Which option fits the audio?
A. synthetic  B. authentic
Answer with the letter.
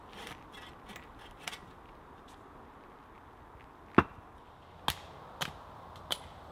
B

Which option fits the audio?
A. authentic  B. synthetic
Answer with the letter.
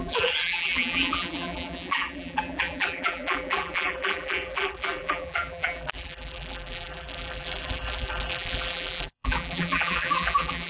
B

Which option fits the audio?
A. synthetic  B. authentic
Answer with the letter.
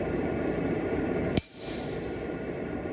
A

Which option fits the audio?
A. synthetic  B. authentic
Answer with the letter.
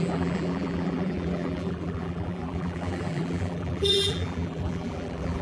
A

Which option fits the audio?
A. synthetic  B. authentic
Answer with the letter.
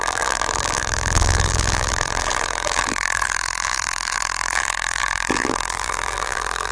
A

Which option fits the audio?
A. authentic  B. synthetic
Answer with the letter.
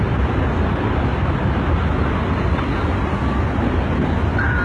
A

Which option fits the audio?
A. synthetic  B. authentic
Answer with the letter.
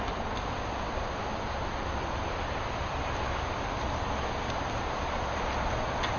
B